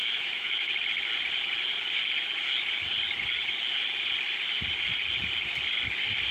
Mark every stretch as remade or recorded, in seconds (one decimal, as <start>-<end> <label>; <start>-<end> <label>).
0.0-0.7 remade; 0.7-6.3 recorded